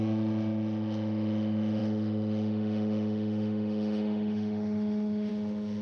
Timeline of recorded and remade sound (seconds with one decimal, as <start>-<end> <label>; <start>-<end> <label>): 0.0-5.8 remade